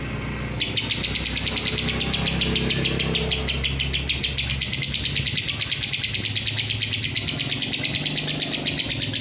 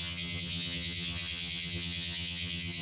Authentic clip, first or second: first